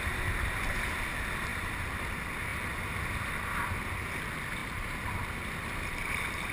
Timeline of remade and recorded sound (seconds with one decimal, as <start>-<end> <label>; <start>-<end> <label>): 0.0-2.5 recorded; 2.5-3.8 remade; 3.8-4.6 recorded; 4.6-6.5 remade